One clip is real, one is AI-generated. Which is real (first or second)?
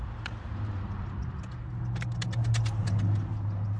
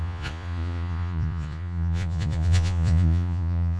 first